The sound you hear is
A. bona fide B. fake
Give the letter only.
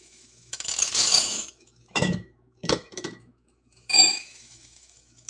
B